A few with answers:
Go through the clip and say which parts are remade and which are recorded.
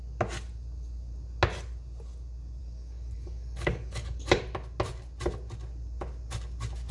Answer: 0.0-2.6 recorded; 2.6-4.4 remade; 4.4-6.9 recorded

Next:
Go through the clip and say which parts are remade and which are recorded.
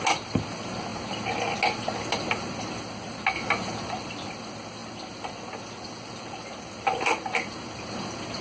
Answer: 0.0-8.4 recorded